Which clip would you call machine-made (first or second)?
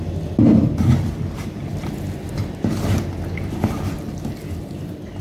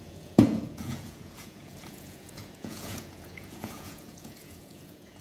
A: second